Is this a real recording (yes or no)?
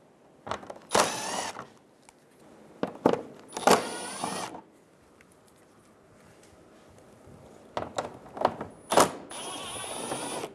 yes